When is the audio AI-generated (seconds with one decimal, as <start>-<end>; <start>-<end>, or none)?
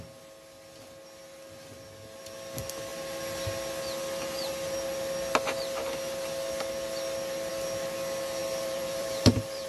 8.4-9.7